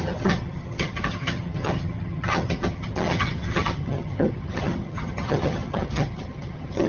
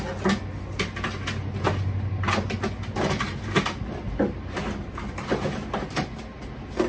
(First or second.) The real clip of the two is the second